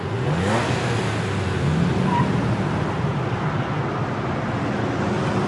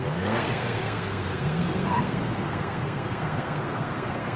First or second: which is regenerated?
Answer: second